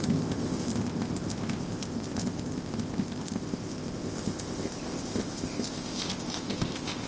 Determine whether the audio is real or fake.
fake